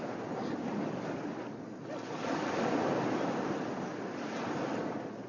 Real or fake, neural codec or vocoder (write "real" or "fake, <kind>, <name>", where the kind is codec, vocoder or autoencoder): real